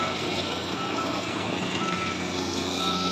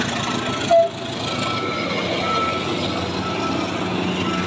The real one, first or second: second